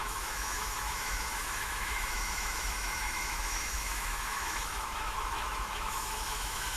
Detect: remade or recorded remade